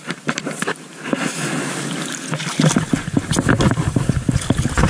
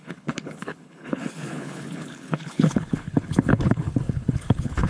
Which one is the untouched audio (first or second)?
first